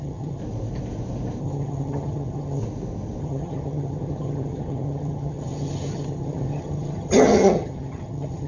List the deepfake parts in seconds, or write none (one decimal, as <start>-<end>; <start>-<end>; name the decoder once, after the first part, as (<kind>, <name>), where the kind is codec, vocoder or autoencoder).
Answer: 0.0-0.4 (vocoder, HiFi-GAN); 1.4-2.6; 3.2-8.5